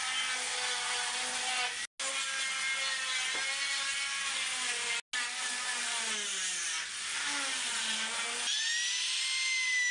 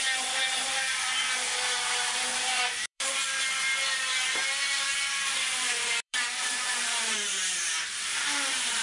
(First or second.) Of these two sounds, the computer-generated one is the second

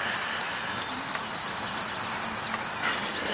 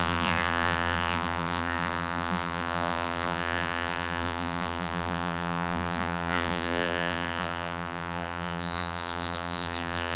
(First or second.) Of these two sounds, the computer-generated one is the second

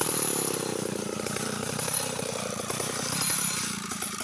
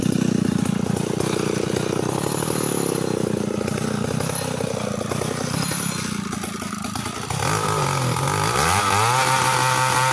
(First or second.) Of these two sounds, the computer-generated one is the first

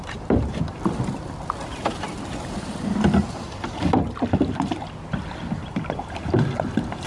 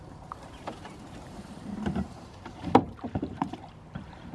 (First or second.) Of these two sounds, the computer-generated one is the second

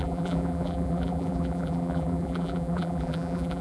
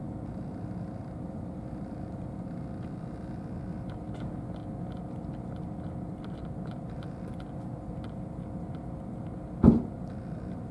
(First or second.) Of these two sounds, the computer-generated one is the first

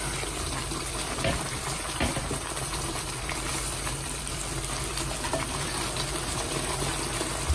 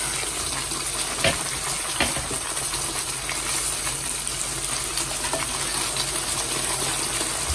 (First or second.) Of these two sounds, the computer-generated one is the first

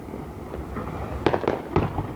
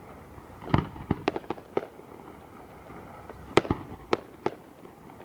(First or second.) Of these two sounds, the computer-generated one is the second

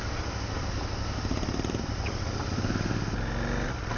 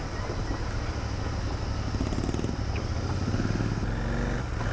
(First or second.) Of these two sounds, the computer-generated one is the first